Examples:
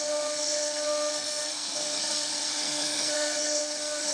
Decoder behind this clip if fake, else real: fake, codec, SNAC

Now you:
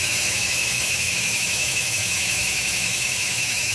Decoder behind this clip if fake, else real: fake, autoencoder, DAC-VAE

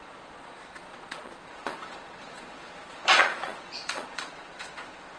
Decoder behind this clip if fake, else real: fake, vocoder, Vocos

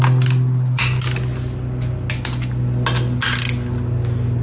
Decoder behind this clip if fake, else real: real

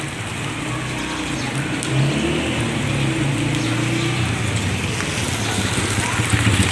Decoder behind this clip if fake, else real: real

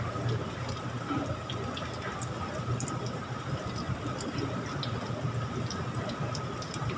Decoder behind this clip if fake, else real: real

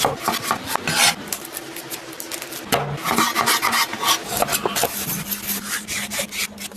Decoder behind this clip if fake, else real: real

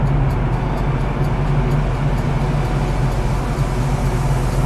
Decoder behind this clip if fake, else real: real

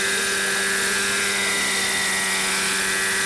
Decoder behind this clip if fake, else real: real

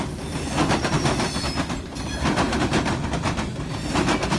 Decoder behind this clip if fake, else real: real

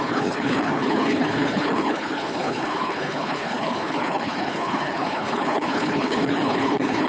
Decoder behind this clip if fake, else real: fake, codec, HILCodec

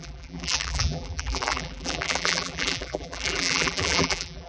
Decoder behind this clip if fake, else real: fake, vocoder, BigVGAN v2